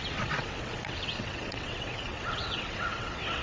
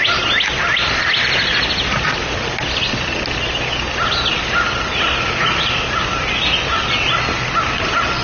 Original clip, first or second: second